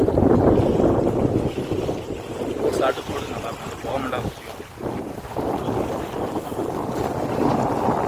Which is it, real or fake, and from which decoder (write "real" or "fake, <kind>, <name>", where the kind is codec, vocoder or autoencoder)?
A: real